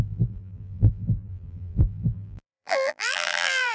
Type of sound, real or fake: fake